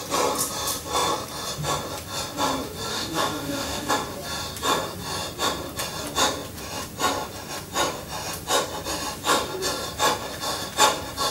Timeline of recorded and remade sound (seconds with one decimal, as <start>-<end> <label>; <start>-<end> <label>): 0.0-2.9 recorded; 2.9-3.9 remade; 3.9-11.3 recorded

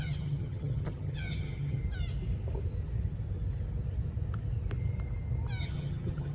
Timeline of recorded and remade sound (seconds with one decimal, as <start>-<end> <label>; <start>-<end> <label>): 0.0-1.8 remade; 1.8-5.6 recorded; 5.6-6.3 remade

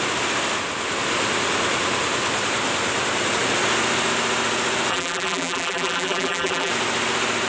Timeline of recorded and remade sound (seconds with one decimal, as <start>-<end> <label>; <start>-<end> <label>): 0.0-4.9 recorded; 4.9-6.7 remade; 6.7-7.5 recorded

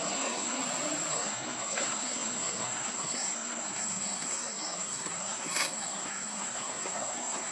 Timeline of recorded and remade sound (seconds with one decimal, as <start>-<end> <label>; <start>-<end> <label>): 0.0-0.6 remade; 0.6-1.1 recorded; 1.1-7.5 remade

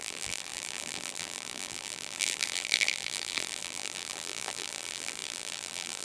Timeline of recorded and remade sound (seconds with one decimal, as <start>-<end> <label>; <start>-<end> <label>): 0.0-6.0 remade

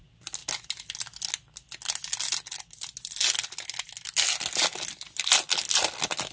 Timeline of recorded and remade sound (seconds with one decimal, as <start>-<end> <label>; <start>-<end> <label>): 0.0-6.3 recorded

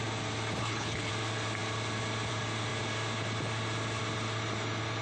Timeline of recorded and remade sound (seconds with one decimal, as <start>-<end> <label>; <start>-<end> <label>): 0.0-0.6 recorded; 0.6-1.1 remade; 1.1-5.0 recorded